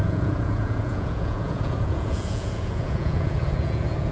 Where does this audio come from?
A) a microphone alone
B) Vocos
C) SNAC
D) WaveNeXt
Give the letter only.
B